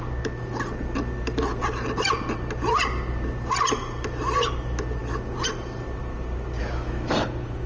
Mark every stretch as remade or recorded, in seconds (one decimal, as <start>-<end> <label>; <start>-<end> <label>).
0.0-6.6 recorded; 6.6-7.1 remade; 7.1-7.7 recorded